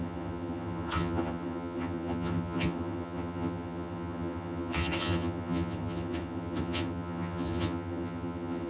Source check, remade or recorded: remade